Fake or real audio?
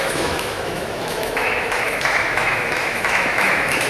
fake